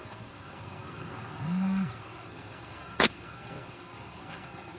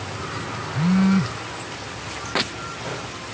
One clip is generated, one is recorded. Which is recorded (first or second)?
second